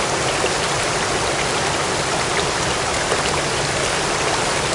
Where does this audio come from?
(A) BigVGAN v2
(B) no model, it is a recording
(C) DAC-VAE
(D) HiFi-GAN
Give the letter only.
B